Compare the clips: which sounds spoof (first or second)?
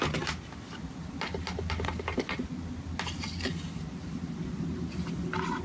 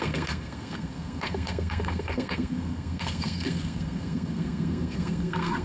second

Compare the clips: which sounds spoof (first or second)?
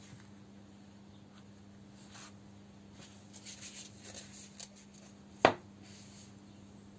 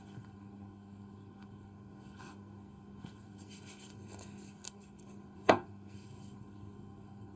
second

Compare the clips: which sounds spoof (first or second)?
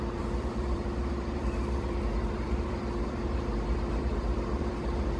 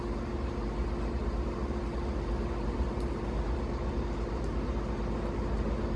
first